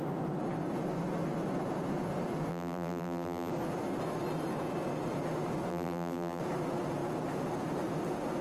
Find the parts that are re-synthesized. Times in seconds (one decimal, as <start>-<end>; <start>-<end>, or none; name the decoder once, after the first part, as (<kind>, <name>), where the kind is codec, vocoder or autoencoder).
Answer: 2.5-3.5 (vocoder, BigVGAN v2); 5.7-6.4